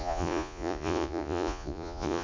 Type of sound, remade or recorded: remade